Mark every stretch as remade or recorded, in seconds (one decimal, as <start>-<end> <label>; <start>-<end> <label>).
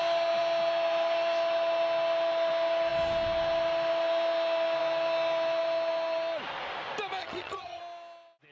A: 0.0-7.2 recorded; 7.2-7.8 remade; 7.8-8.5 recorded